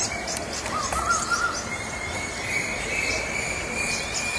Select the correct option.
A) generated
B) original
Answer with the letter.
A